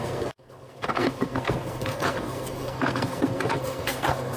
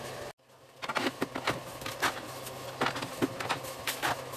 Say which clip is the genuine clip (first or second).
second